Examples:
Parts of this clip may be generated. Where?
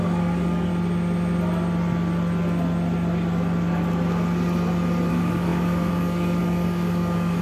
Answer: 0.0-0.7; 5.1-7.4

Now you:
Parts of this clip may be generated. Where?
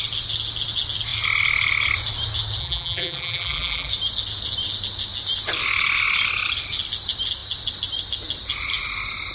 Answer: 2.6-3.9